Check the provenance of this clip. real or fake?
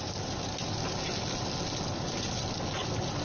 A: real